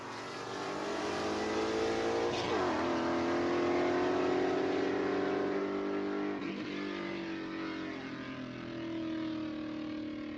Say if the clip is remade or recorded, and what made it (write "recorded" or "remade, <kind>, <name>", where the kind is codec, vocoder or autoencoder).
recorded